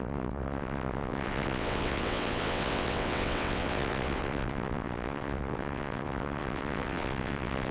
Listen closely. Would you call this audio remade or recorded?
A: remade